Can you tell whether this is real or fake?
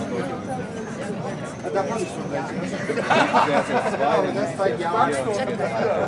real